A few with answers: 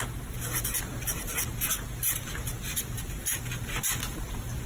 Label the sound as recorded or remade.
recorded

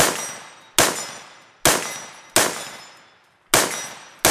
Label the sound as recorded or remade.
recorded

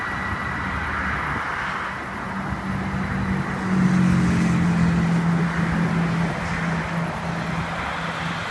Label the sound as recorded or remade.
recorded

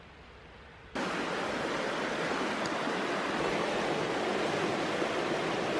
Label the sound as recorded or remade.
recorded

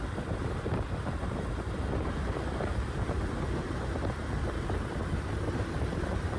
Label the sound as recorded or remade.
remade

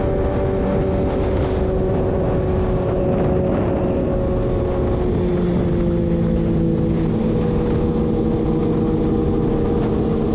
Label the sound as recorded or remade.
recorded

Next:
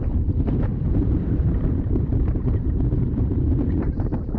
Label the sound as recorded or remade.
remade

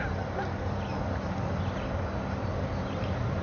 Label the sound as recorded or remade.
remade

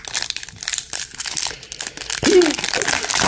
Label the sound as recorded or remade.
recorded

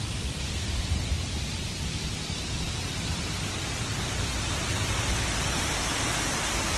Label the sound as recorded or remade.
remade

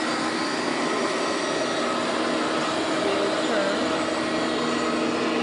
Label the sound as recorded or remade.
recorded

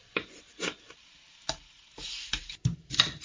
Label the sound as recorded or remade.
remade